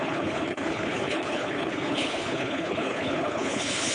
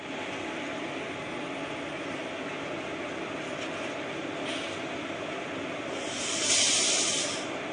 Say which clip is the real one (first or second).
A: second